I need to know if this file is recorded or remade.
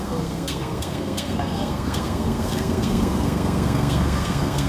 remade